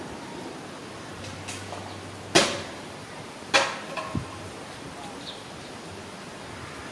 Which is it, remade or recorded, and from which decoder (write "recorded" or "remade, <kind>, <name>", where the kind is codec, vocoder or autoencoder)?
recorded